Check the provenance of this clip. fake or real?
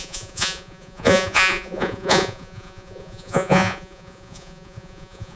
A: fake